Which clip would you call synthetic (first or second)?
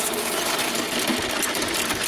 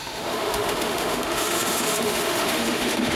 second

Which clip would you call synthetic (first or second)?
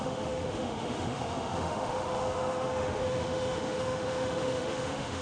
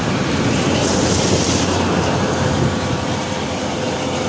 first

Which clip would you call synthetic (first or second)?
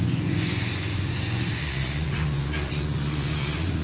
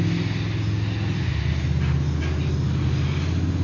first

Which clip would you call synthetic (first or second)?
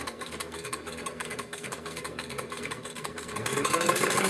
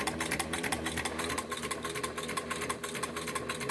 first